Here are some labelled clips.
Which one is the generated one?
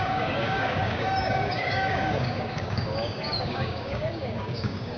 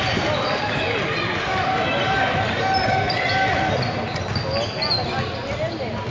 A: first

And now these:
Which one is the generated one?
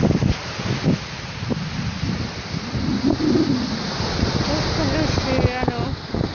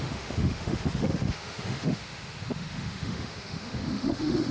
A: second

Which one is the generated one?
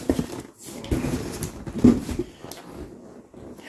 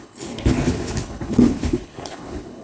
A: second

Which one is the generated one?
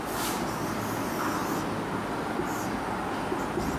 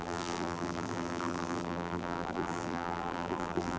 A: second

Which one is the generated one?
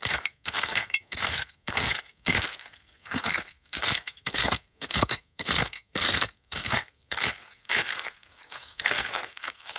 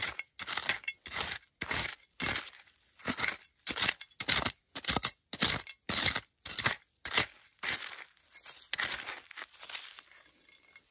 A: first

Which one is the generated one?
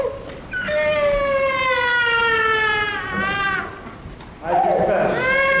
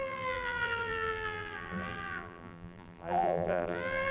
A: second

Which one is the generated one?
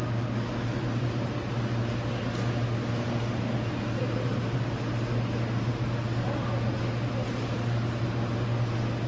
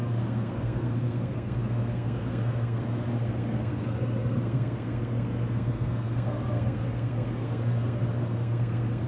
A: second